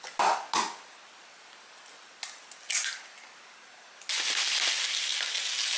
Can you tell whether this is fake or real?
real